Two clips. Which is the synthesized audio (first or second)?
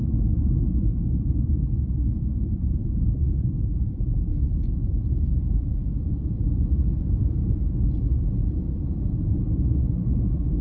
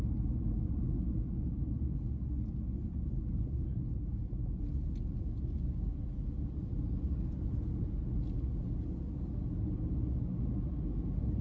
first